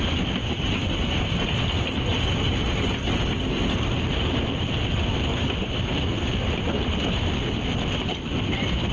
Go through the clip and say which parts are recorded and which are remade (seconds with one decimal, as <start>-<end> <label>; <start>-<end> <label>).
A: 0.0-2.1 remade; 2.1-4.1 recorded; 4.1-8.9 remade